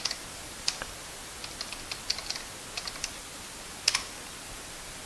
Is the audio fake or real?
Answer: real